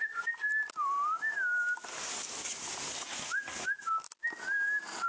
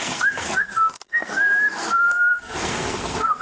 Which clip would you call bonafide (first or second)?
first